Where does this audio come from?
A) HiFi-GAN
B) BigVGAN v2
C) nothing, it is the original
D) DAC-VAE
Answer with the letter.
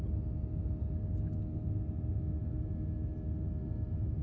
C